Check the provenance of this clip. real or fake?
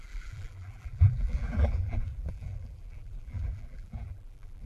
fake